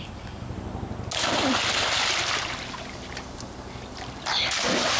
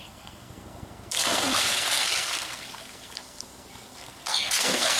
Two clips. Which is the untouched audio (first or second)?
first